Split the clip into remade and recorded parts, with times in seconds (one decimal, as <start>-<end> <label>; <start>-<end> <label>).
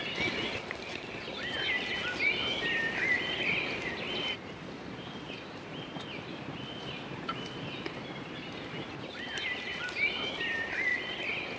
0.0-11.6 recorded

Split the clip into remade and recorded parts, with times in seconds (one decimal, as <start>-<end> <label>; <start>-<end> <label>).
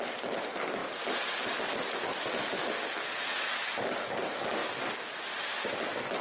0.0-6.2 recorded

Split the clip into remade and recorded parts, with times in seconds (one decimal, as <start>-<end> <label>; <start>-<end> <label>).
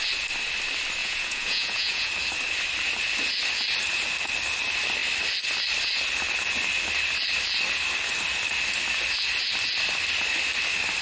0.0-1.0 recorded; 1.0-2.1 remade; 2.1-11.0 recorded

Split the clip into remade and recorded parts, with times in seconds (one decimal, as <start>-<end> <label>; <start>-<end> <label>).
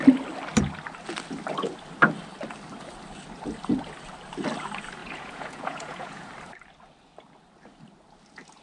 0.0-5.0 recorded; 5.0-6.3 remade; 6.3-8.6 recorded